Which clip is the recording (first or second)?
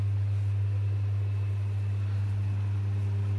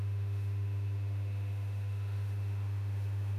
first